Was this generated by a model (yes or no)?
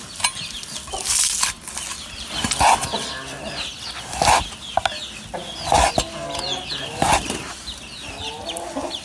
no